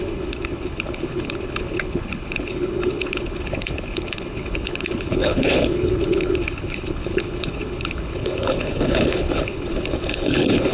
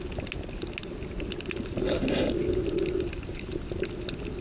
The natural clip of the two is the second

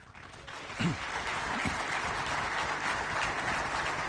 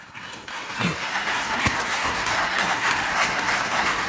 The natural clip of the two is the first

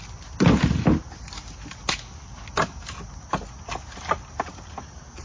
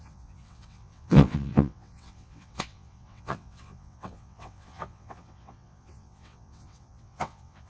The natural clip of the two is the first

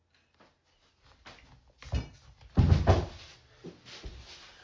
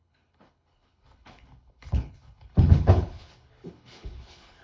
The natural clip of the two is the first